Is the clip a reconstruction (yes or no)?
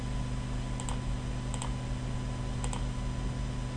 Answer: no